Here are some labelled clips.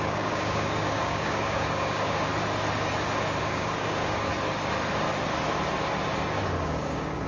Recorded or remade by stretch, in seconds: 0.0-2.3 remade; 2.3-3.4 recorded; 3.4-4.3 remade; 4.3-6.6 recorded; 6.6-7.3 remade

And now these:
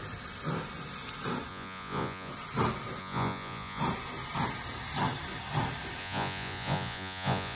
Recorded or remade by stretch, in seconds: 0.0-1.5 recorded; 1.5-2.3 remade; 2.3-3.0 recorded; 3.0-3.8 remade; 3.8-6.0 recorded; 6.0-7.6 remade

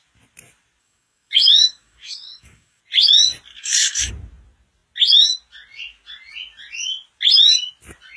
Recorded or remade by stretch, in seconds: 0.0-0.8 recorded; 0.8-2.8 remade; 2.8-3.5 recorded; 3.5-4.1 remade; 4.1-8.2 recorded

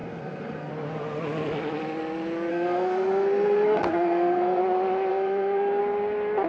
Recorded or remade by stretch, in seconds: 0.0-0.7 remade; 0.7-2.5 recorded; 2.5-4.6 remade; 4.6-5.1 recorded; 5.1-5.8 remade; 5.8-6.5 recorded

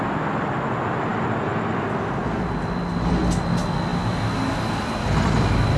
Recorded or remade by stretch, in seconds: 0.0-5.8 recorded

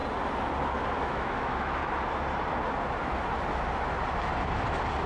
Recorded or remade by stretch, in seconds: 0.0-1.0 recorded; 1.0-1.8 remade; 1.8-5.1 recorded